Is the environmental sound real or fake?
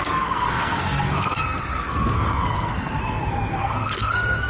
fake